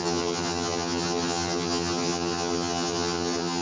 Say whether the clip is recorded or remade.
remade